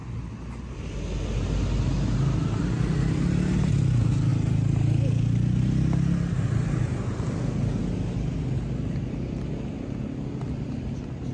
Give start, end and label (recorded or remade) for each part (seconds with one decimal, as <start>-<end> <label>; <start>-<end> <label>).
0.0-11.3 recorded